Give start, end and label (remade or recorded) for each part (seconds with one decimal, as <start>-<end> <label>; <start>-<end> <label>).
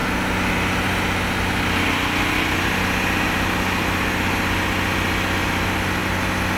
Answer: 0.0-6.6 recorded